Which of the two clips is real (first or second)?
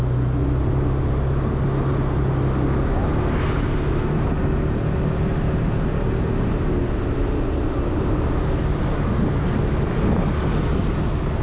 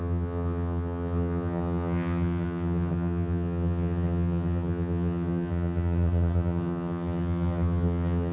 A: first